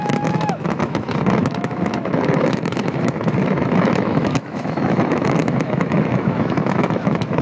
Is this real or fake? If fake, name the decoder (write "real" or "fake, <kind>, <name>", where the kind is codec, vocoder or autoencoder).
fake, autoencoder, DAC-VAE